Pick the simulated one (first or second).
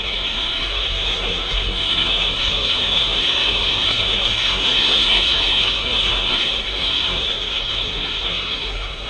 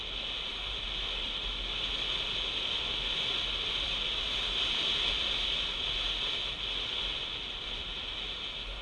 first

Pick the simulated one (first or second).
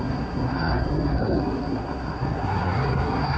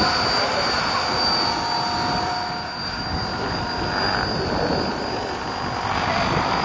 first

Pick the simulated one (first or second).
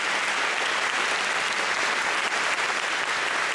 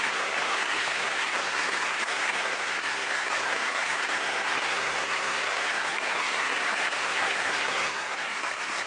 second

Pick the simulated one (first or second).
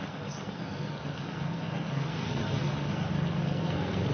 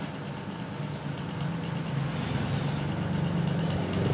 first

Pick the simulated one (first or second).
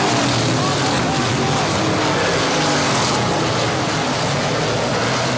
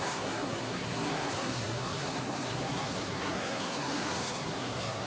second